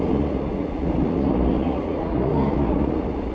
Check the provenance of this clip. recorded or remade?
remade